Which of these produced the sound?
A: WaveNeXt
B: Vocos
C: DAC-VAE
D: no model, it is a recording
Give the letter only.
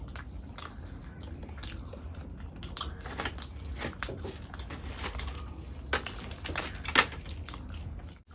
D